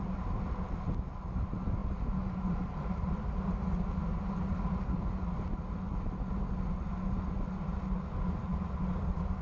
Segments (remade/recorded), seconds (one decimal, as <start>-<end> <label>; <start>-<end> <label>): 0.0-9.4 recorded